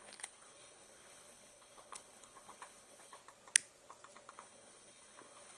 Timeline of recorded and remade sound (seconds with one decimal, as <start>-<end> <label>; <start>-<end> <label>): 0.0-3.2 remade; 3.2-4.3 recorded; 4.3-5.6 remade